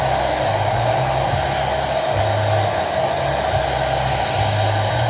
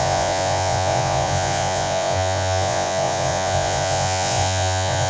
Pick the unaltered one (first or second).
first